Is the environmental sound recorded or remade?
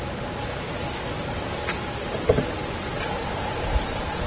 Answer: recorded